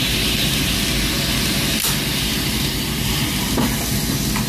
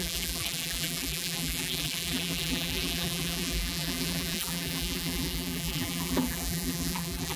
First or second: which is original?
first